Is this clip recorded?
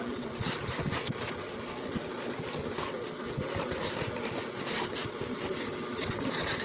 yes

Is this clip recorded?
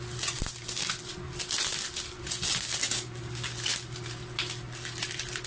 yes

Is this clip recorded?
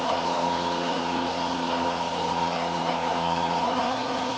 no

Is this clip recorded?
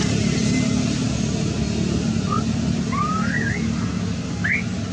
yes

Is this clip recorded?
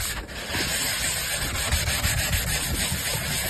yes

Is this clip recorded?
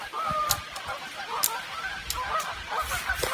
yes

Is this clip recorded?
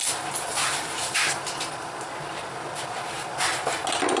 yes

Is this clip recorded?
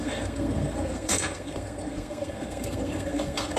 no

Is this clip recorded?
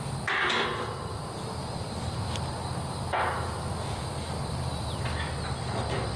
yes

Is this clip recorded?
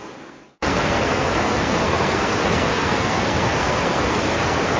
no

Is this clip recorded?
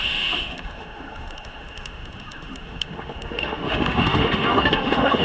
no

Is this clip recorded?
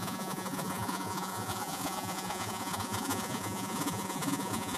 no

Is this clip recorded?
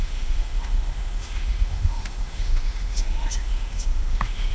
no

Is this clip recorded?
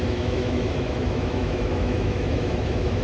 no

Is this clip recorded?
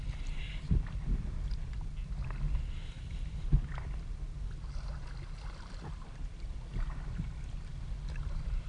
yes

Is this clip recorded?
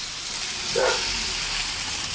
yes